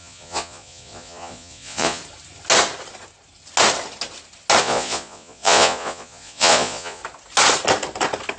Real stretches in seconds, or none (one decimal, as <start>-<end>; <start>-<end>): 2.0-4.6; 7.0-8.4